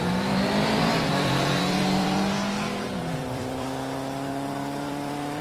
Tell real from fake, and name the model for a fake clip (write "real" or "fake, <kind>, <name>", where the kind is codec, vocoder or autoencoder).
fake, vocoder, BigVGAN v2